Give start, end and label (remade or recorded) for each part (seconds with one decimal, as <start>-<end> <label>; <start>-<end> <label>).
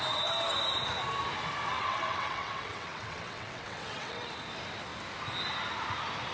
0.0-1.7 recorded; 1.7-4.3 remade; 4.3-6.3 recorded